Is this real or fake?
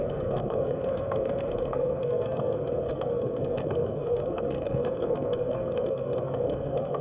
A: fake